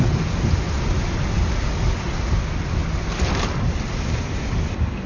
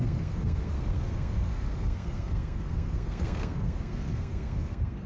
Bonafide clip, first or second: first